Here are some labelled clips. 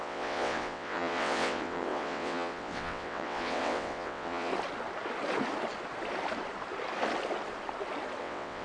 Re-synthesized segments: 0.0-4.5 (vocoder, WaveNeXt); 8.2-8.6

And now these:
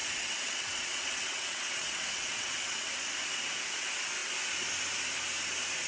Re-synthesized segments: 0.0-2.9 (vocoder, WaveNeXt)

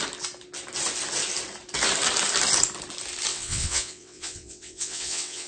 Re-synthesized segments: 3.3-5.5 (vocoder, WaveNeXt)

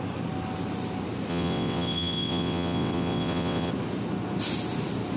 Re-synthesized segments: 1.3-3.7 (vocoder, WaveNeXt)

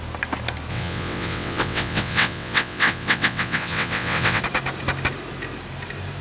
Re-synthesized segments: 0.7-4.4 (vocoder, WaveNeXt)

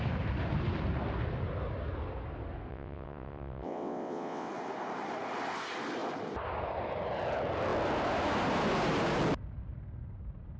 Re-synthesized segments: 2.7-4.5 (vocoder, WaveNeXt)